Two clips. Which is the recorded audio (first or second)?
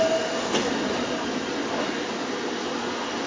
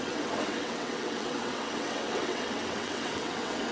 first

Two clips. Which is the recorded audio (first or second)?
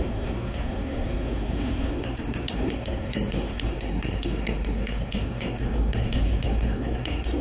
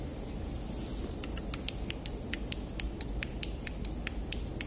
second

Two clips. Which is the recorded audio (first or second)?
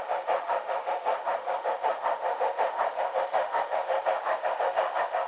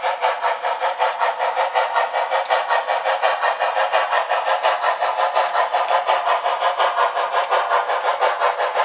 second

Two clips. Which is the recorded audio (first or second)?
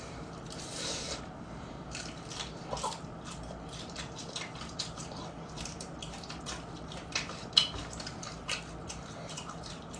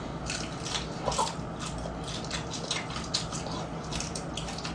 second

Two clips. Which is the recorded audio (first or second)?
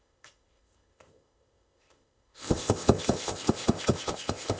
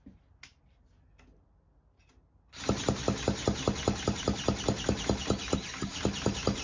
second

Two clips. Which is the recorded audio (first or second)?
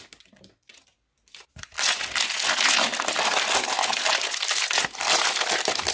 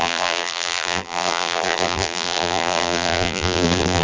first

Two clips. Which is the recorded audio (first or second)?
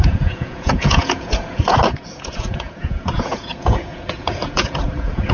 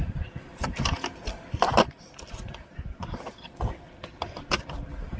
second